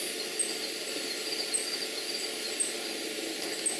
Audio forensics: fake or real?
real